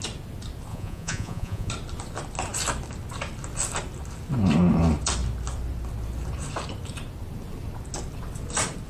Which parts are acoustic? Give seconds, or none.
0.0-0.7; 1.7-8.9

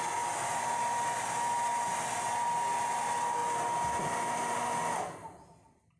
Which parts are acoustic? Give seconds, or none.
0.0-3.4; 4.6-6.0